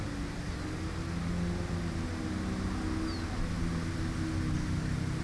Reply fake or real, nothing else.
real